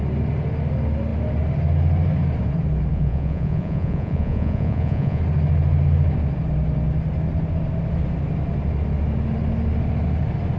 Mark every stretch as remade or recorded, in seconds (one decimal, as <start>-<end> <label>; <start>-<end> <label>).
0.0-2.9 recorded; 2.9-5.2 remade; 5.2-10.6 recorded